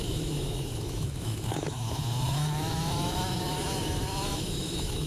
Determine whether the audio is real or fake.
fake